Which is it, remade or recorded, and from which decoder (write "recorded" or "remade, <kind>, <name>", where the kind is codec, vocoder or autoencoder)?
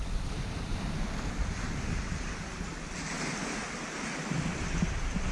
recorded